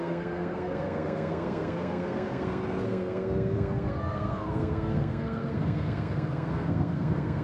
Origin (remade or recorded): remade